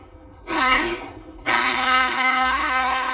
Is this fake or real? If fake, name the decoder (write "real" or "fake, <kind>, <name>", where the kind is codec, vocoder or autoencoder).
fake, codec, SNAC